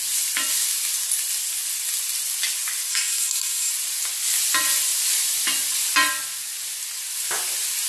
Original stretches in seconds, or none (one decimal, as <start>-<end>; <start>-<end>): 0.0-2.9; 3.7-7.9

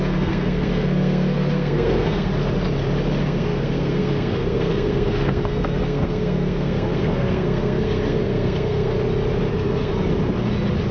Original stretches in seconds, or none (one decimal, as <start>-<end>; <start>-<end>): 2.3-3.2; 8.9-9.5; 9.9-10.9